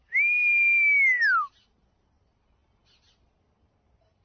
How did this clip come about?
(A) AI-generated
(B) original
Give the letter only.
B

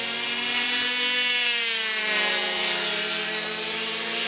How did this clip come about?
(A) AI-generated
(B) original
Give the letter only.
A